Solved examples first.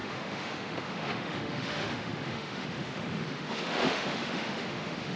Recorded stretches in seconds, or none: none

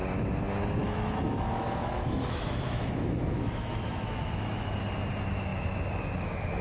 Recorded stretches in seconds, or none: 0.0-0.8; 4.7-6.6

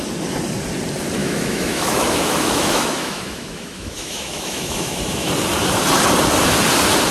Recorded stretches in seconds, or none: 0.0-1.2; 5.3-7.1

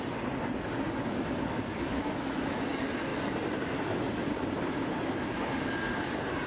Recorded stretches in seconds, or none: 0.0-1.7; 2.6-6.5